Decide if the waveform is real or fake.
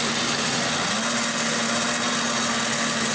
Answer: real